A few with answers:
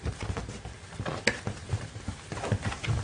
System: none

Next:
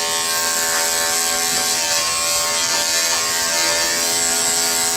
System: none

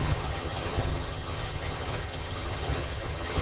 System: vocoder, HiFi-GAN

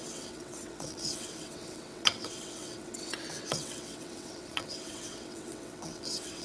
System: vocoder, WaveNeXt